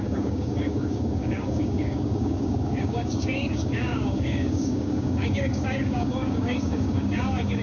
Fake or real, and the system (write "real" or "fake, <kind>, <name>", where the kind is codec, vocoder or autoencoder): fake, codec, DAC